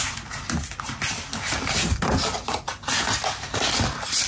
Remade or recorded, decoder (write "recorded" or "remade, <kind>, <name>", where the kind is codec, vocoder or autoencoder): recorded